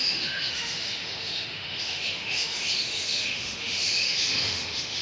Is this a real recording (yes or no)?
no